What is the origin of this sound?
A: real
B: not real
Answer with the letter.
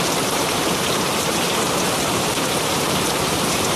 B